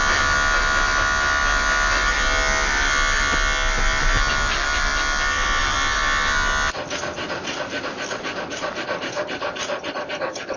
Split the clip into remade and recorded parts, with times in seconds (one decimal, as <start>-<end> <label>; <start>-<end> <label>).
0.0-10.6 recorded